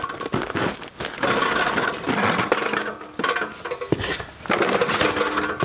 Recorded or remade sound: recorded